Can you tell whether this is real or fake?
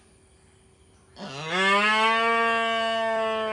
real